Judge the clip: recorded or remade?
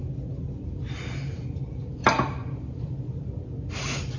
recorded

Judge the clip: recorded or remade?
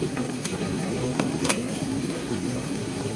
remade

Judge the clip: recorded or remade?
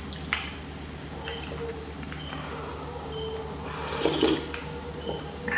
recorded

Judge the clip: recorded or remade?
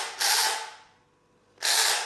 recorded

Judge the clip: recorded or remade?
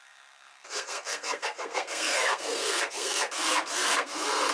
remade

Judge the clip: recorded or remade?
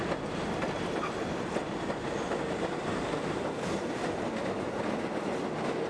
recorded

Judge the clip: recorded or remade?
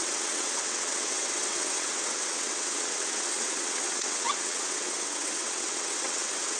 remade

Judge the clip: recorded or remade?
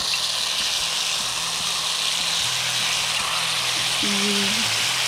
recorded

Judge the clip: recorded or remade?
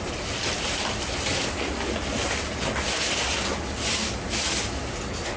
recorded